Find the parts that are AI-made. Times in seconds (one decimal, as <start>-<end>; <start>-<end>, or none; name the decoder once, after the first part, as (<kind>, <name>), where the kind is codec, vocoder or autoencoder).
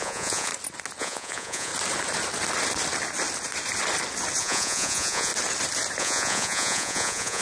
0.0-0.5 (vocoder, Vocos); 1.0-1.7; 4.4-5.3; 6.0-7.4